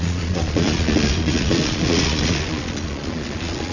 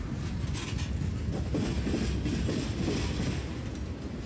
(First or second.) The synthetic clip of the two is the first